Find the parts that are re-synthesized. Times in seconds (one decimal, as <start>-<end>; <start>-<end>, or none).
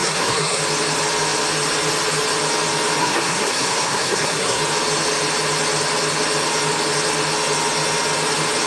0.0-0.6; 3.0-4.6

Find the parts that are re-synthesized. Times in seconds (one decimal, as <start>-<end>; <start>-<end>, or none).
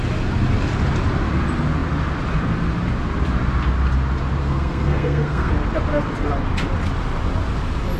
4.4-5.5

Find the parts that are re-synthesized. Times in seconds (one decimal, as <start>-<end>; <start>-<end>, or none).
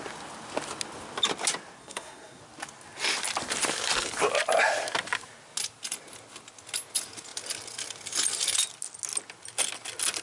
1.8-2.4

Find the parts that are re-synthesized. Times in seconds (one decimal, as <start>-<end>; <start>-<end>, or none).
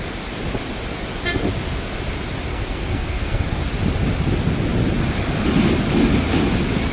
2.5-3.6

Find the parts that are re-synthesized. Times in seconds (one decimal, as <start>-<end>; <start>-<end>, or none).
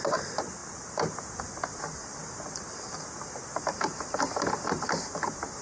none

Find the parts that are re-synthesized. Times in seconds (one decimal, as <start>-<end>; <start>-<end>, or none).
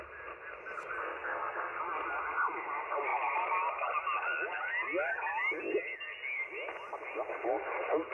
1.0-1.8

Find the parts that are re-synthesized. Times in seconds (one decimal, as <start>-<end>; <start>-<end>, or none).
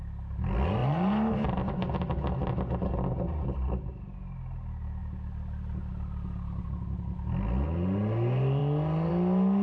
none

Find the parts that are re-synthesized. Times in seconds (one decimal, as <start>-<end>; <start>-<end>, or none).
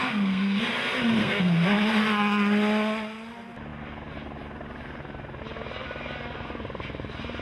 0.0-0.6; 1.2-1.9